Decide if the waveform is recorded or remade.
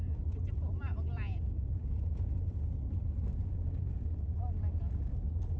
recorded